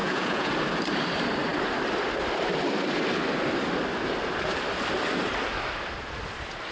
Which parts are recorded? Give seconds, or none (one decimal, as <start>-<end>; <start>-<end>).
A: 0.5-6.7